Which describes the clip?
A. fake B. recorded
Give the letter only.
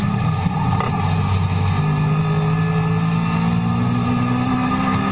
B